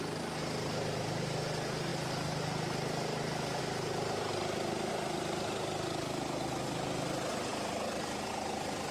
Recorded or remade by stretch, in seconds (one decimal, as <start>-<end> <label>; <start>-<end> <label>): 0.0-8.9 recorded